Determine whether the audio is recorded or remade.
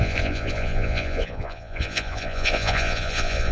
remade